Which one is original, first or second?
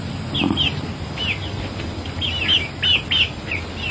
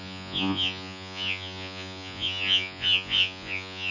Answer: first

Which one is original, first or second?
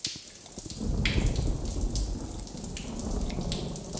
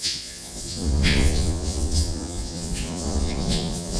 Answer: first